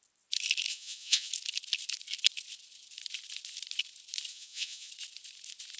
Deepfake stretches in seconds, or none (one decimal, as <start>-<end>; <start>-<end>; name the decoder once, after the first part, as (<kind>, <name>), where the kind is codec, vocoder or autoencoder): 0.7-1.3 (vocoder, Vocos); 4.3-4.9